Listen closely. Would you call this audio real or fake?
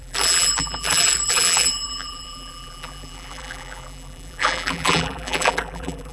fake